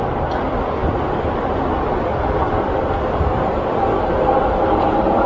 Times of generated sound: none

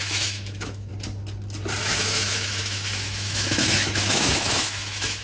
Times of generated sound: 0.0-0.9; 1.8-5.2

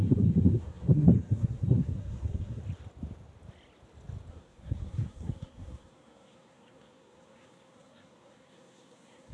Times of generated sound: 0.0-2.6; 4.3-9.3

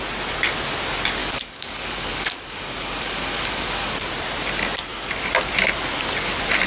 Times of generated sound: 1.2-4.1